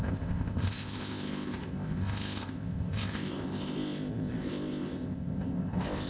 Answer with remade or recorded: remade